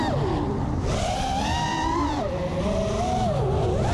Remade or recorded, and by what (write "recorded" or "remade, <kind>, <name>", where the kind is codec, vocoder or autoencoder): recorded